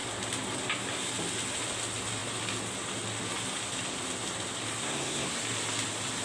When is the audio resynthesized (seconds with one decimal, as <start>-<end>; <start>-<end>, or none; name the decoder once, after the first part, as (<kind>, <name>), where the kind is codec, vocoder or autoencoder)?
4.8-5.4 (codec, SNAC)